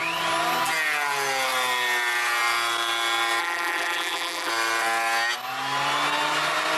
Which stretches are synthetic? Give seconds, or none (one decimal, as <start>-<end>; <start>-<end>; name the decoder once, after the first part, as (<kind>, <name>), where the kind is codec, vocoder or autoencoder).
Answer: 3.4-4.5 (vocoder, BigVGAN v2)